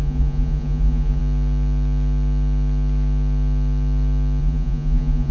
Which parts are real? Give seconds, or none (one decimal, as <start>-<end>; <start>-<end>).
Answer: 1.2-4.4